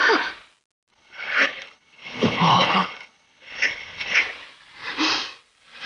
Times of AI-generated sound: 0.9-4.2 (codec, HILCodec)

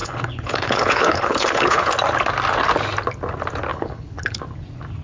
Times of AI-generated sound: 0.0-1.9 (codec, HILCodec); 3.7-4.4